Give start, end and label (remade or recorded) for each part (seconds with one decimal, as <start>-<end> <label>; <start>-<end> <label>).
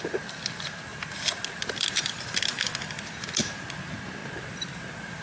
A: 0.0-5.2 recorded